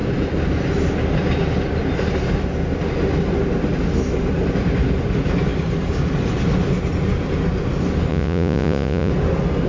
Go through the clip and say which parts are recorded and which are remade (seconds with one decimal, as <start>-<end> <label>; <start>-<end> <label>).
0.0-8.1 recorded; 8.1-9.1 remade; 9.1-9.7 recorded